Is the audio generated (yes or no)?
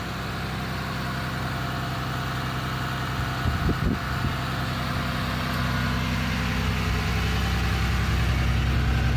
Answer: no